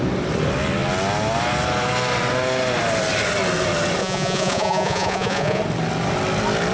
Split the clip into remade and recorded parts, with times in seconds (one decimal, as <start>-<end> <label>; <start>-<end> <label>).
0.0-4.0 recorded; 4.0-5.6 remade; 5.6-6.7 recorded